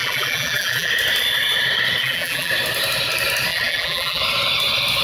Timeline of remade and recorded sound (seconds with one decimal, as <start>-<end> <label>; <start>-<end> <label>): 0.0-0.9 remade; 0.9-2.0 recorded; 2.0-2.5 remade; 2.5-3.5 recorded; 3.5-4.2 remade; 4.2-5.0 recorded